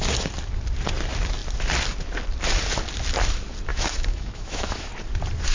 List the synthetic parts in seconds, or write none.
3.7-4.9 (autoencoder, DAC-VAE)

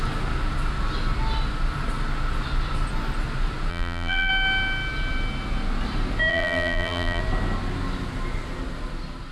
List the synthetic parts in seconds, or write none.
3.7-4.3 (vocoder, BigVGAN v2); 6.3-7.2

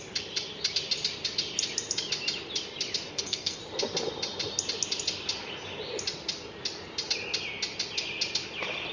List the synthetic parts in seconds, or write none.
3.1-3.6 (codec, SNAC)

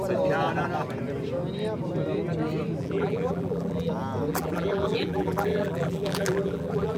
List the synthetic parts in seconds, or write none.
2.8-3.9 (vocoder, BigVGAN v2); 4.3-7.0

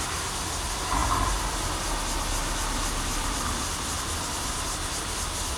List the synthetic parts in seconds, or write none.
none

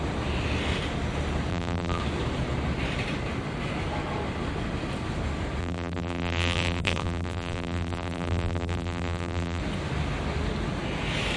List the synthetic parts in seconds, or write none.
1.5-2.0 (vocoder, BigVGAN v2); 5.6-9.6

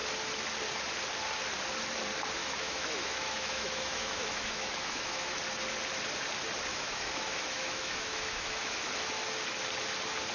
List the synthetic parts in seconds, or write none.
2.4-5.4 (autoencoder, DAC-VAE); 6.7-8.8